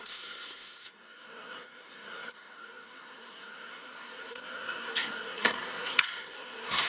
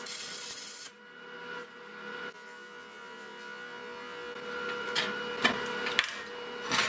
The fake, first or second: first